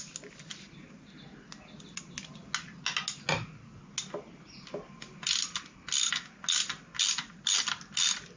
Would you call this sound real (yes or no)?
yes